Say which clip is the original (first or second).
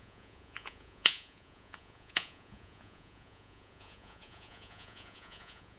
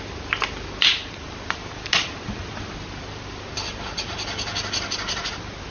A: second